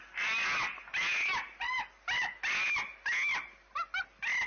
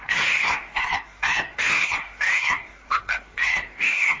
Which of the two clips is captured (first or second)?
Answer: first